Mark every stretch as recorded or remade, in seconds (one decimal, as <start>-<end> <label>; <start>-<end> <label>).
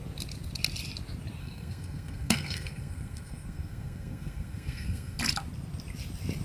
0.0-1.4 recorded; 1.4-5.2 remade; 5.2-6.4 recorded